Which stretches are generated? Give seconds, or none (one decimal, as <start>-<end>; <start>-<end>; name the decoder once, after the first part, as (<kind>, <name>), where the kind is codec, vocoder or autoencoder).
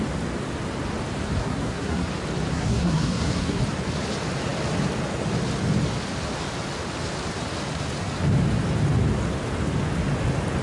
1.4-2.1 (codec, SNAC); 2.5-3.6